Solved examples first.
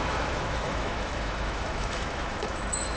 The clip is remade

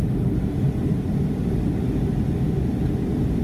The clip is recorded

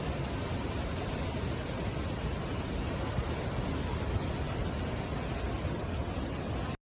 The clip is recorded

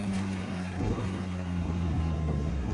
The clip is remade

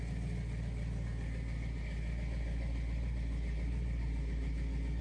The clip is recorded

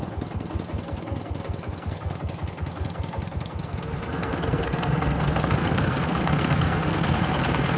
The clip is remade